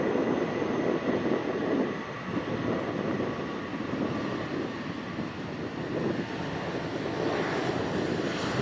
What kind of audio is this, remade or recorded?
recorded